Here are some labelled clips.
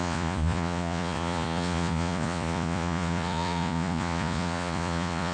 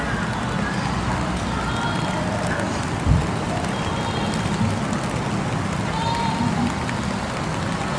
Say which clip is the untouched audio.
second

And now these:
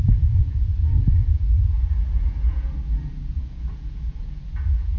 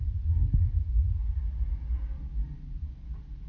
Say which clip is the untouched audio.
second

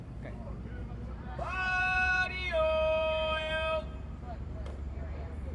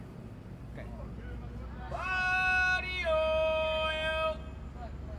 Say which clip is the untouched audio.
second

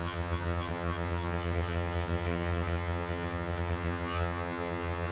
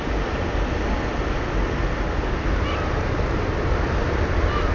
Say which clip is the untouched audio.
second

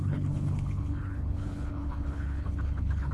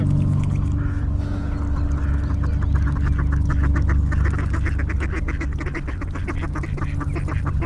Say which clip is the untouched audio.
second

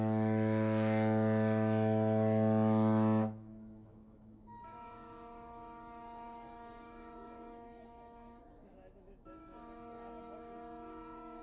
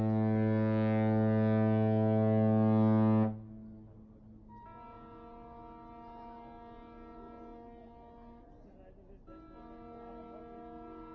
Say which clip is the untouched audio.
second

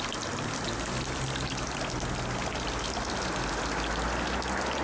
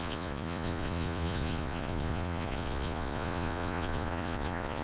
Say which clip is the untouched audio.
first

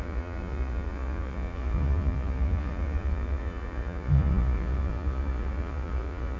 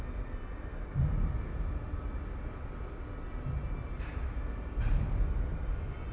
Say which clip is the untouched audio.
second